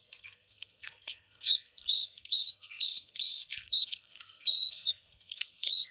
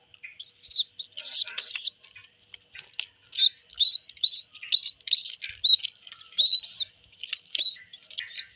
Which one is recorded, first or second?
second